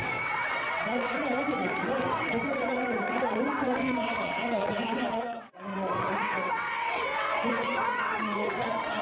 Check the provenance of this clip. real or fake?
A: fake